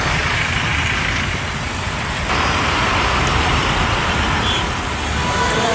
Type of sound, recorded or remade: remade